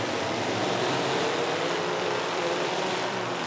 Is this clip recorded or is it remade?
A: remade